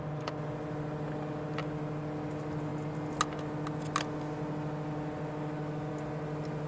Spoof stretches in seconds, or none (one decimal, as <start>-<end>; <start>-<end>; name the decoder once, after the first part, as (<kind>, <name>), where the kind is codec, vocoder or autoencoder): none